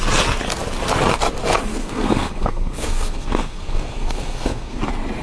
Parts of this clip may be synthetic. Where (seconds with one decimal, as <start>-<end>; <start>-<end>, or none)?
1.7-4.8